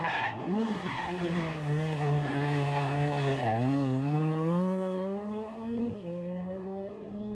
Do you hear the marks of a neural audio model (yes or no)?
yes